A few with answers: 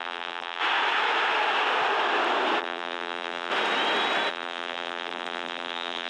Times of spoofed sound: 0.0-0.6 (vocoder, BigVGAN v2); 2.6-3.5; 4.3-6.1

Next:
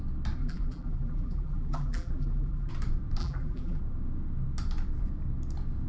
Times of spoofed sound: 0.4-2.7 (vocoder, BigVGAN v2); 3.2-3.8

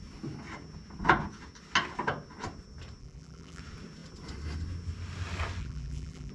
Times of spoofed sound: 3.0-3.6 (vocoder, BigVGAN v2); 5.6-6.3

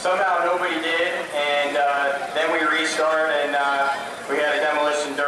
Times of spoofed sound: 0.0-0.7 (vocoder, BigVGAN v2); 1.6-2.3

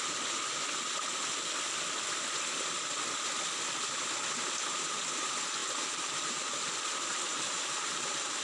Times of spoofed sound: 5.6-6.8 (vocoder, BigVGAN v2); 7.3-8.4

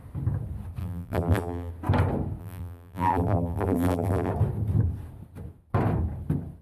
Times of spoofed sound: 0.8-1.7 (vocoder, BigVGAN v2); 2.4-4.3

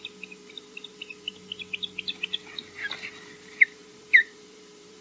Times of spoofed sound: 3.8-5.0 (vocoder, BigVGAN v2)